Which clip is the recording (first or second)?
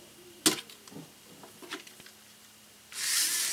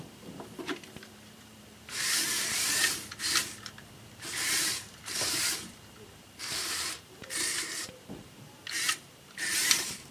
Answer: first